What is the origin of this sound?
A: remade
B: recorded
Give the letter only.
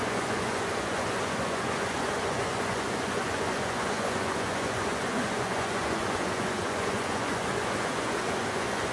A